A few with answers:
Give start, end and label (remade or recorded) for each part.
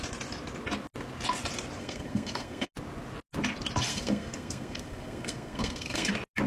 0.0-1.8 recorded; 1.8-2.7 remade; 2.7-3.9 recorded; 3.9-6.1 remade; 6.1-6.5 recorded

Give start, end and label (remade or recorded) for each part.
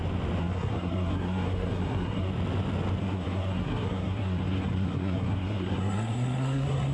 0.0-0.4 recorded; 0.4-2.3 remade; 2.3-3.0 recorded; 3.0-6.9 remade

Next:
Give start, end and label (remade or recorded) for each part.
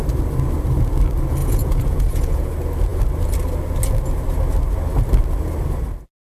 0.0-1.4 recorded; 1.4-2.5 remade; 2.5-6.2 recorded